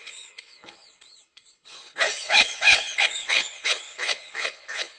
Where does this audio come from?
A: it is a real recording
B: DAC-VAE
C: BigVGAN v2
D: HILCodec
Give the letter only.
D